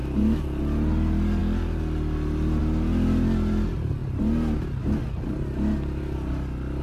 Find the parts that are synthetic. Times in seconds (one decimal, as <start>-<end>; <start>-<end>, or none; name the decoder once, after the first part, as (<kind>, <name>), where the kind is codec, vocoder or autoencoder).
none